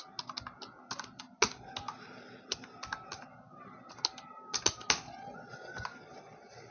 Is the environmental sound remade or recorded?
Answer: recorded